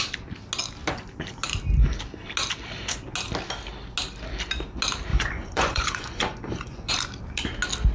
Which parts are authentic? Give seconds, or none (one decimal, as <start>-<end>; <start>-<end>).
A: 0.0-5.1; 6.9-7.9